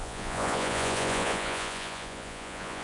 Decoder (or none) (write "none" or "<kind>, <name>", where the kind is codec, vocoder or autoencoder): vocoder, Vocos